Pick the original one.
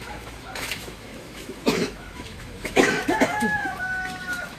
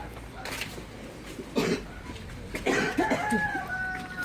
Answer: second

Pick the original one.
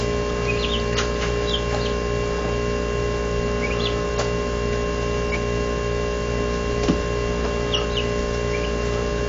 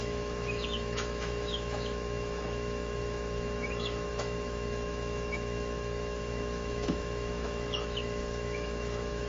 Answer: first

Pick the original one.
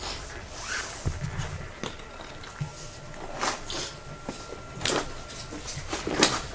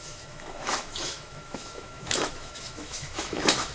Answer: first